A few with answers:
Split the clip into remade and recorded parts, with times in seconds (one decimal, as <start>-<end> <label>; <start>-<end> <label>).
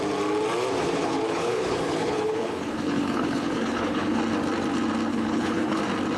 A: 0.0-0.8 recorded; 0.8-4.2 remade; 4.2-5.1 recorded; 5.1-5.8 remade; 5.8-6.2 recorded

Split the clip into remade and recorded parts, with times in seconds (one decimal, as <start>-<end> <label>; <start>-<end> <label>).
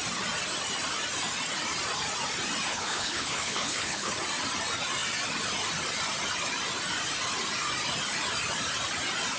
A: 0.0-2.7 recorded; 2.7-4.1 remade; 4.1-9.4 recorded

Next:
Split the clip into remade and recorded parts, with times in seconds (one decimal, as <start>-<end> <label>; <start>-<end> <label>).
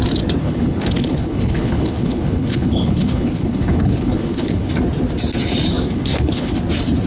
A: 0.0-0.4 recorded; 0.4-4.7 remade; 4.7-5.9 recorded; 5.9-6.6 remade; 6.6-7.1 recorded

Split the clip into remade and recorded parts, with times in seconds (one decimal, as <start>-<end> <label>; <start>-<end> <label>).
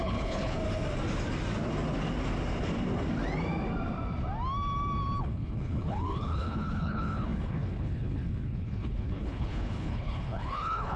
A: 0.0-0.6 remade; 0.6-5.2 recorded; 5.2-11.0 remade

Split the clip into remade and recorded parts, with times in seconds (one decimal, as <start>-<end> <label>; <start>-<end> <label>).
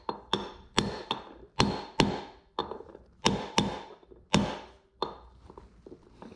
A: 0.0-6.4 recorded